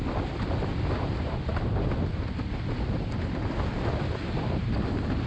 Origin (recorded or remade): recorded